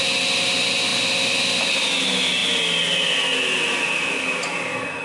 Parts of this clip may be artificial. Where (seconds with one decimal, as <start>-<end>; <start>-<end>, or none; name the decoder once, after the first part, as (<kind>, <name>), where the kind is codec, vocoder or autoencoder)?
none